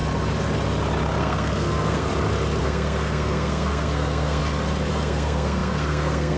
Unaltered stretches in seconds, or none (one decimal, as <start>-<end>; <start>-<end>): 0.0-1.2; 2.1-2.6; 4.4-4.9